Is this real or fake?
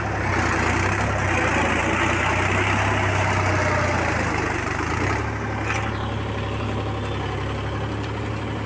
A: real